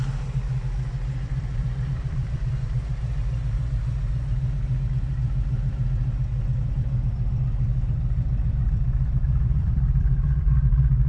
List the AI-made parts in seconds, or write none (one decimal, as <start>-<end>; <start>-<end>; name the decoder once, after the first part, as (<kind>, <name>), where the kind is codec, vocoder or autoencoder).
1.3-2.9 (vocoder, BigVGAN v2); 7.7-10.5